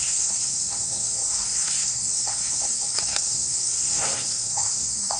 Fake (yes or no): yes